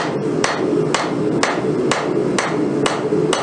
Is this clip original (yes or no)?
yes